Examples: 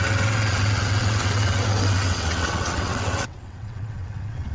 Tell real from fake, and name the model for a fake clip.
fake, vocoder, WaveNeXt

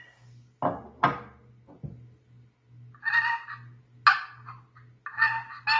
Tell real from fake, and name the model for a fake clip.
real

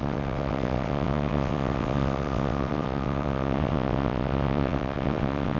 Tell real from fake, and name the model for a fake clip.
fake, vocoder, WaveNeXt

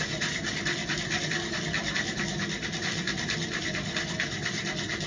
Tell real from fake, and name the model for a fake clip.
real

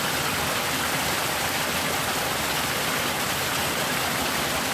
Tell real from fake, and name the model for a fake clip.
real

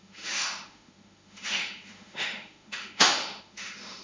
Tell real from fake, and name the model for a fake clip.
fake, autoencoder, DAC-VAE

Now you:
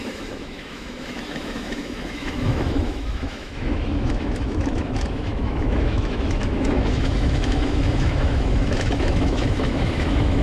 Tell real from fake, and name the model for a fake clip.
fake, autoencoder, DAC-VAE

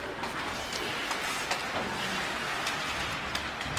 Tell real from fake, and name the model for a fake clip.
real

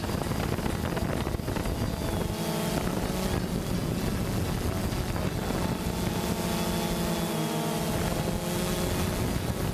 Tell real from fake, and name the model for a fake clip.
real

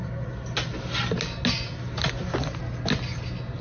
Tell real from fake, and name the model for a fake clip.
real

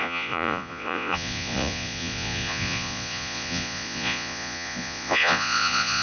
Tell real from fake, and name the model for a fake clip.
fake, vocoder, Vocos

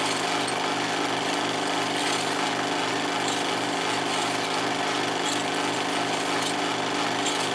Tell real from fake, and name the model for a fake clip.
real